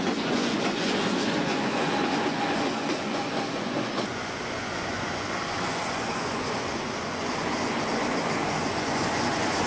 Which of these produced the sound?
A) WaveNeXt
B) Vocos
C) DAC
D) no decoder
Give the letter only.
B